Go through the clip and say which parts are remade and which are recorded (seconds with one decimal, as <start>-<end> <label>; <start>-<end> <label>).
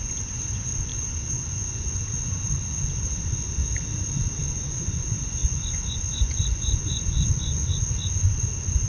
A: 0.0-3.6 remade; 3.6-4.4 recorded; 4.4-8.9 remade